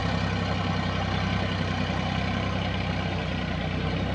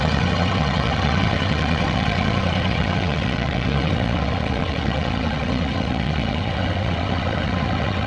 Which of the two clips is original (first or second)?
first